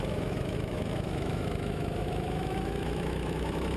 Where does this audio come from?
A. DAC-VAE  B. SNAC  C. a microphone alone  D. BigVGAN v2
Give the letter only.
A